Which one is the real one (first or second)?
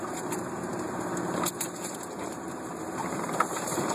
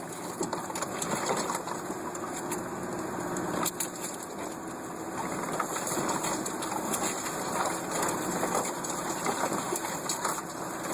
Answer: second